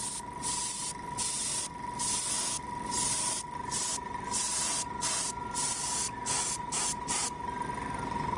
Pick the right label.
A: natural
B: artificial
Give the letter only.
A